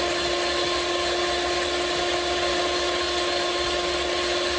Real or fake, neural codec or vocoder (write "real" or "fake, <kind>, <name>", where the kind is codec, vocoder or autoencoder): real